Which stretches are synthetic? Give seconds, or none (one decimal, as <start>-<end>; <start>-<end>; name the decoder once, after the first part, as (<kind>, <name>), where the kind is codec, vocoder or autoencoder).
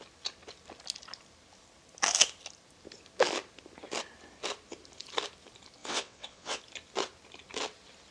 5.8-6.6 (vocoder, WaveNeXt)